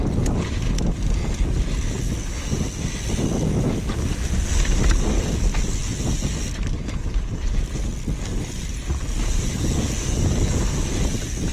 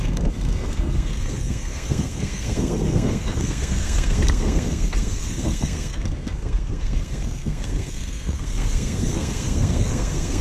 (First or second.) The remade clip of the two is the second